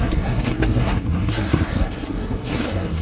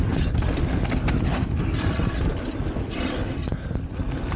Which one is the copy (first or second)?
first